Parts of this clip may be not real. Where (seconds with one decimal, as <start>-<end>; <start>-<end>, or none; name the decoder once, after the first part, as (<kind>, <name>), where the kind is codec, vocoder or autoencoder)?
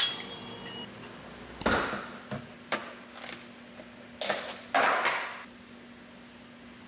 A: none